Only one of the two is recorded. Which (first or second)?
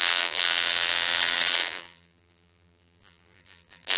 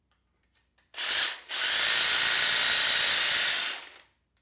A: second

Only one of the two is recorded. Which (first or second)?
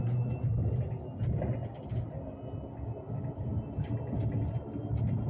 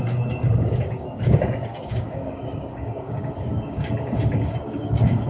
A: first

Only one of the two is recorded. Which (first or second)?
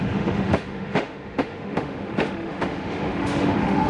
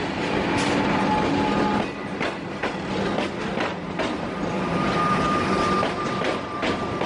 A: second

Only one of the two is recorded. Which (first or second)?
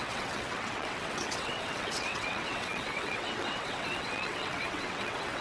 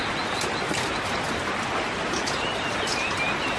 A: second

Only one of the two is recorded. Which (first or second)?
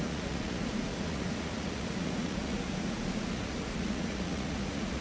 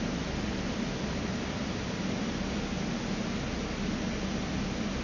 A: second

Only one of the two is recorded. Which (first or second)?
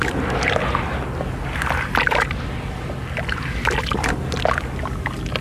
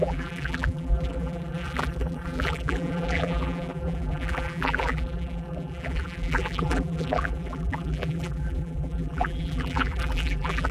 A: first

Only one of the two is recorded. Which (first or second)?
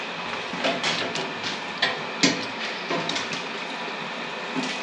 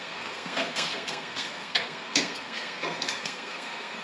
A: first